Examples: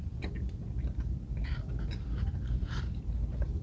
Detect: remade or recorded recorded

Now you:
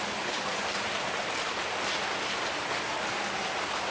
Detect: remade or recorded recorded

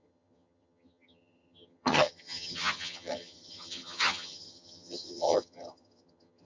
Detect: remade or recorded remade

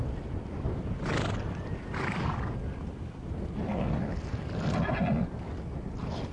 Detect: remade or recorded recorded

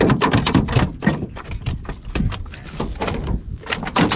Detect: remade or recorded recorded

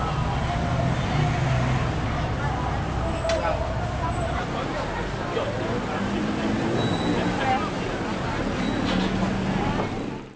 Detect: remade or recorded recorded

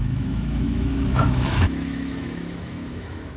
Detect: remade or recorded remade